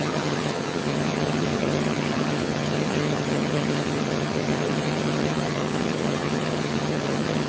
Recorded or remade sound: remade